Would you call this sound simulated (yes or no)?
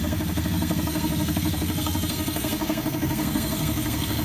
yes